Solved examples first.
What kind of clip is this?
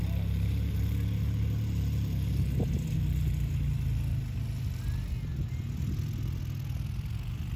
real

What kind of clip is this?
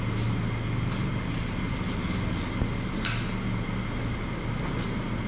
real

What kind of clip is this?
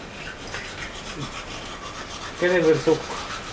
real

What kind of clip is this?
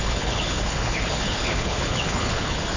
fake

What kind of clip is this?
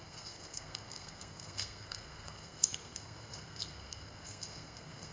fake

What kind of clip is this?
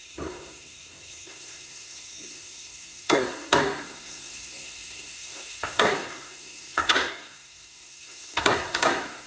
fake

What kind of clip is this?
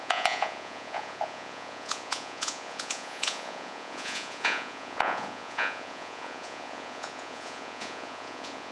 fake